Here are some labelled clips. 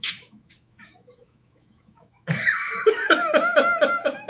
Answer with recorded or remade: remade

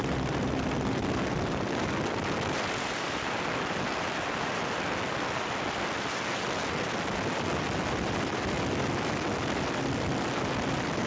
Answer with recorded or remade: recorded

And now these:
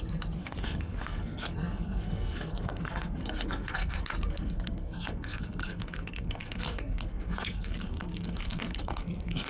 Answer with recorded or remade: remade